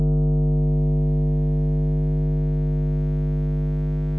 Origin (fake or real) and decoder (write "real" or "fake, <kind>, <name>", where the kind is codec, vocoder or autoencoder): real